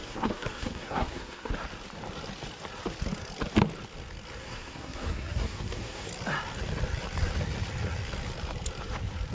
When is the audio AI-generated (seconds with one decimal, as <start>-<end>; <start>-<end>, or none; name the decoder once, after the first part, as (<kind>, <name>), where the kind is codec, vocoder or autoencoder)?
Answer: 0.0-1.5 (codec, SNAC); 4.4-6.1